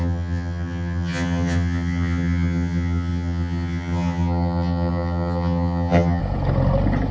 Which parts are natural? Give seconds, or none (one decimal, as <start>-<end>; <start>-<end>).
6.2-7.1

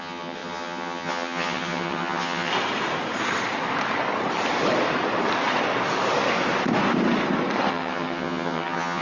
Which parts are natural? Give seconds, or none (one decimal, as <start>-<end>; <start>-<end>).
2.5-7.7

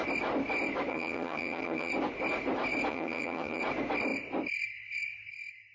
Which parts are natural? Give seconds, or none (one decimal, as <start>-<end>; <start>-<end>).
0.0-0.9; 1.9-2.9; 3.6-5.7

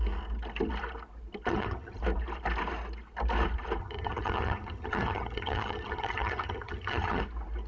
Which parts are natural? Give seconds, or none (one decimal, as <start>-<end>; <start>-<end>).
0.0-1.5; 2.0-3.8; 7.2-7.7

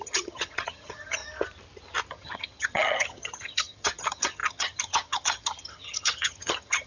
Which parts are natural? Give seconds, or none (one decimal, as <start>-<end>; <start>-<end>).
1.2-2.1

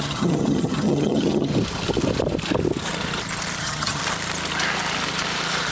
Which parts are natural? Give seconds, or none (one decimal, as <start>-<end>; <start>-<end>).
1.5-3.6; 4.0-5.7